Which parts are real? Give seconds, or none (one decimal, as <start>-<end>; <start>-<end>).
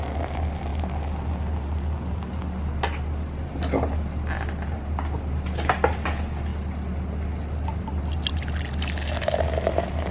0.0-10.1